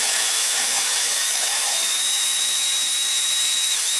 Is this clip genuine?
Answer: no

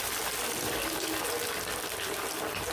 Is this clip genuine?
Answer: yes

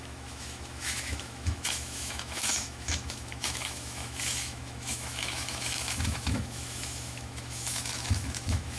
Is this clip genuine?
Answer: no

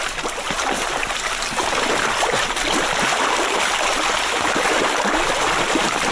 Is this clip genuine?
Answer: yes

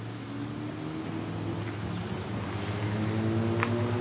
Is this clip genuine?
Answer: yes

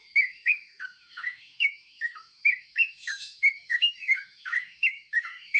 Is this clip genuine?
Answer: no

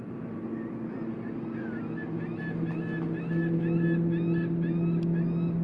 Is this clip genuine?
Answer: yes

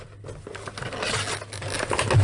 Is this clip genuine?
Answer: yes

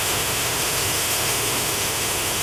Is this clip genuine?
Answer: no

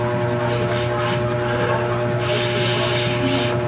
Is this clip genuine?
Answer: yes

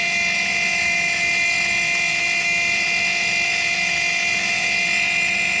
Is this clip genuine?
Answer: yes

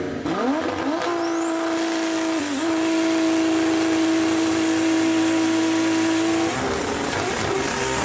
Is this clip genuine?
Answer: yes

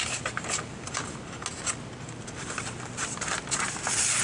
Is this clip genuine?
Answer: yes